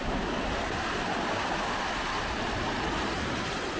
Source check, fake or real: real